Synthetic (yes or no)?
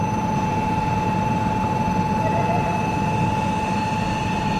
no